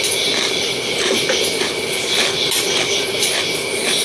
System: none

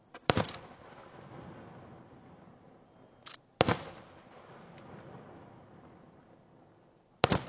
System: none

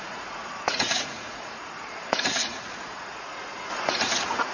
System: vocoder, Vocos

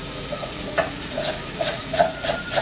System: vocoder, Vocos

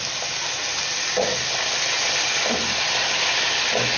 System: none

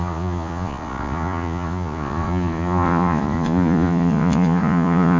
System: vocoder, Vocos